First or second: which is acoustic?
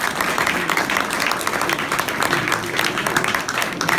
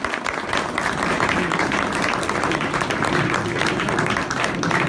first